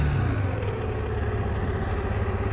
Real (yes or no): yes